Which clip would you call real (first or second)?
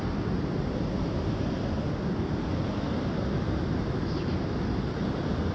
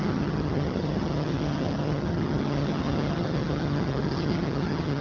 first